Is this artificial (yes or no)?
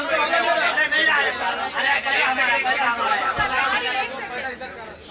no